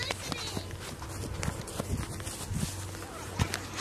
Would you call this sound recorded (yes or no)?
yes